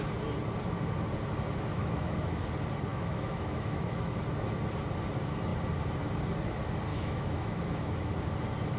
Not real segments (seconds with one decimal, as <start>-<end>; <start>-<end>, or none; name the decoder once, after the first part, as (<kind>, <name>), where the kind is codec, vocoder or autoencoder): 1.7-2.5 (autoencoder, DAC-VAE); 2.9-4.2; 6.9-8.1